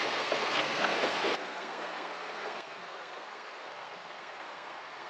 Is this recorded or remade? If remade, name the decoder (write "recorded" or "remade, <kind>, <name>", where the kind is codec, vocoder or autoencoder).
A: remade, codec, SNAC